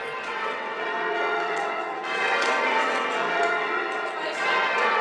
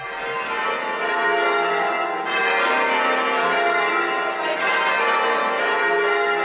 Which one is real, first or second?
second